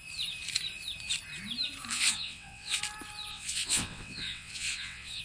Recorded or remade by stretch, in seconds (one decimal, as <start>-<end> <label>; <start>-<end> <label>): 0.0-1.9 recorded; 1.9-2.8 remade; 2.8-3.3 recorded; 3.3-5.2 remade